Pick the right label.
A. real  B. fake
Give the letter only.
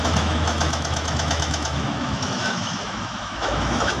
B